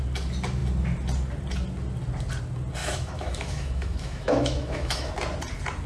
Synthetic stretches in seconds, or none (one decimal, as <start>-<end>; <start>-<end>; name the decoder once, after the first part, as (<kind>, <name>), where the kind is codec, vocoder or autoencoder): 2.8-5.1 (autoencoder, DAC-VAE)